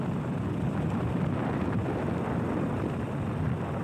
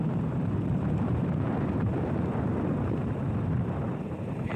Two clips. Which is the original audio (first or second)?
first